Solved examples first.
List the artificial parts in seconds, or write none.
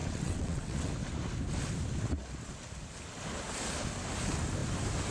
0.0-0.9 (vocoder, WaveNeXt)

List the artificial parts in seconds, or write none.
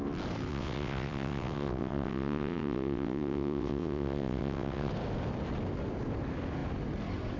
0.5-4.9 (vocoder, WaveNeXt)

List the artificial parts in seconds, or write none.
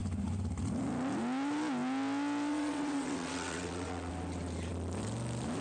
2.5-4.1 (vocoder, WaveNeXt)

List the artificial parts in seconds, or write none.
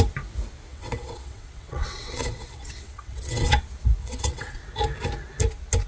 0.7-3.6 (vocoder, WaveNeXt); 4.0-4.6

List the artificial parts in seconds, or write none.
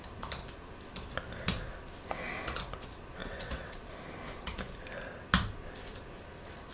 3.2-3.8 (vocoder, WaveNeXt)